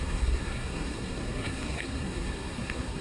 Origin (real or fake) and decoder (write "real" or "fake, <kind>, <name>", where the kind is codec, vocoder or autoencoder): fake, codec, SNAC